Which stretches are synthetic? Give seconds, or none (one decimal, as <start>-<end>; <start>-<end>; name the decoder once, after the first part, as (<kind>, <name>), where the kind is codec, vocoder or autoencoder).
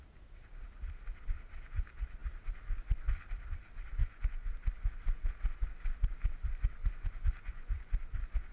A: 4.0-4.9 (vocoder, Vocos); 6.8-7.9